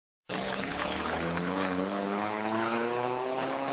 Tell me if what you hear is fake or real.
fake